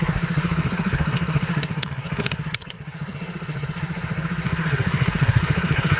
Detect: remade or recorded remade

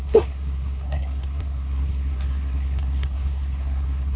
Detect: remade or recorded remade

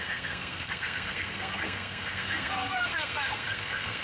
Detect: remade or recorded remade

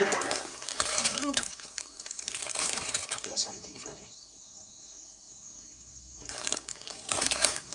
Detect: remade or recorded remade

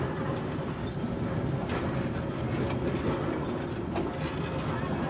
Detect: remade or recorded recorded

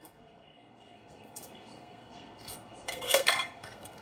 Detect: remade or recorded remade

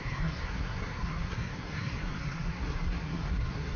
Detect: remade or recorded remade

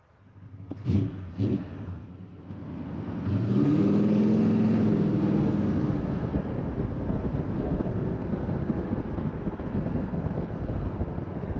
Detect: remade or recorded remade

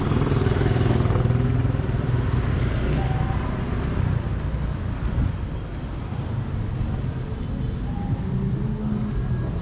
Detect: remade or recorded recorded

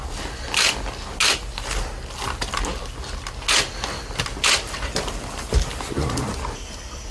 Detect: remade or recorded recorded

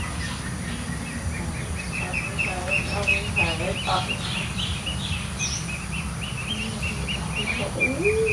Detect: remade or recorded recorded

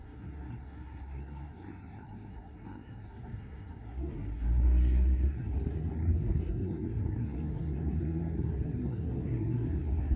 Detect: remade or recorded remade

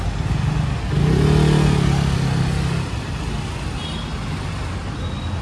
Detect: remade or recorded recorded